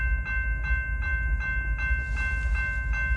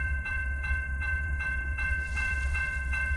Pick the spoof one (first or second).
second